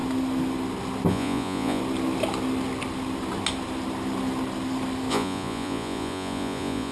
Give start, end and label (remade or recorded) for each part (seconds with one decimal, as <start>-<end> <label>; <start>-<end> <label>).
0.0-1.1 recorded; 1.1-1.8 remade; 1.8-5.1 recorded; 5.1-6.9 remade